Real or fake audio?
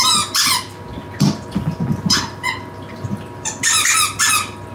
real